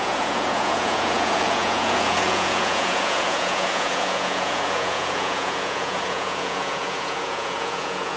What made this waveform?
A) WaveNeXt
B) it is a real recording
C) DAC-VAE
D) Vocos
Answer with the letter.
D